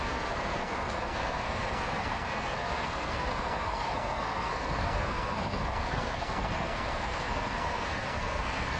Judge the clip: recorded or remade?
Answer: remade